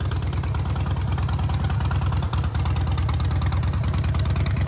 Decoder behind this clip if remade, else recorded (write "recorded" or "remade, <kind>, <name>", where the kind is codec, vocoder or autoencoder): recorded